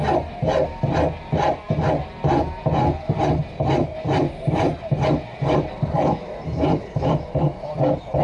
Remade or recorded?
recorded